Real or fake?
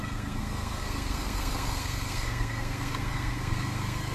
fake